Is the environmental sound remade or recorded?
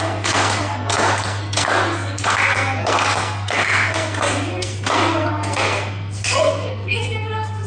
remade